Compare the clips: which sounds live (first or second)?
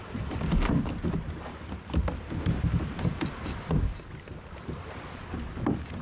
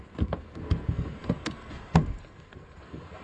first